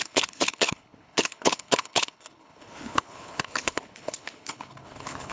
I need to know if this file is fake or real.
fake